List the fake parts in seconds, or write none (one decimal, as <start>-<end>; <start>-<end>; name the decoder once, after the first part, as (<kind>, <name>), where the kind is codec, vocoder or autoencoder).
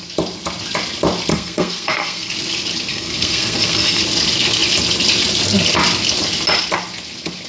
1.3-2.3 (codec, SNAC); 2.9-4.0